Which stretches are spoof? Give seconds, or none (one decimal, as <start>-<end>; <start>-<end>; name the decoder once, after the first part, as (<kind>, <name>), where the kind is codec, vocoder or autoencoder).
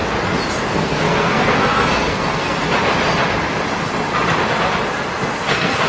0.7-2.6 (codec, SNAC); 5.5-5.9